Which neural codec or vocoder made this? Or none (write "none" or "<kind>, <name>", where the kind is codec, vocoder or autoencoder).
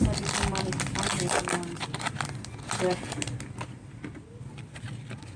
none